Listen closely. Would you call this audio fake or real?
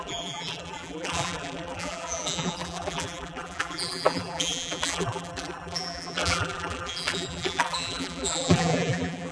fake